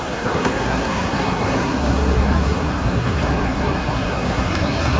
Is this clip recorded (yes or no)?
no